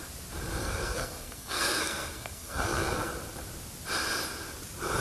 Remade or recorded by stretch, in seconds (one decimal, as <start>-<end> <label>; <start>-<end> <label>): 0.0-0.6 recorded; 0.6-3.1 remade; 3.1-5.0 recorded